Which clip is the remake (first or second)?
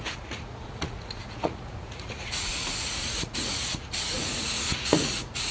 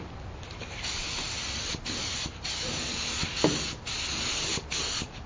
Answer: first